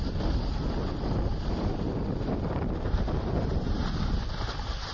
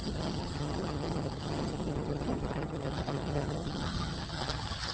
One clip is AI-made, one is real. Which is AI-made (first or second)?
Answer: second